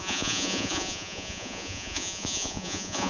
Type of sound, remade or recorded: remade